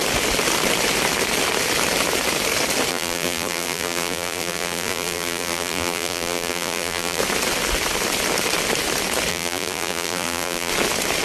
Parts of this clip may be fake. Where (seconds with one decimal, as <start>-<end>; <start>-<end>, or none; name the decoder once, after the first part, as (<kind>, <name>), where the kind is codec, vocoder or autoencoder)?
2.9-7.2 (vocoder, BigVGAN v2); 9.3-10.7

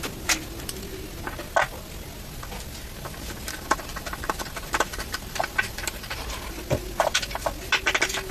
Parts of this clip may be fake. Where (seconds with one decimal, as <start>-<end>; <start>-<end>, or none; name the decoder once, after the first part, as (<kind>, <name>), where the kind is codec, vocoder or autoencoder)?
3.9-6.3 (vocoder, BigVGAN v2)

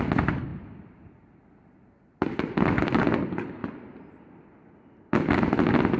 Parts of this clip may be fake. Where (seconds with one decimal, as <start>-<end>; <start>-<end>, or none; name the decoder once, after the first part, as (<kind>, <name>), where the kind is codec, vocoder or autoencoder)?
none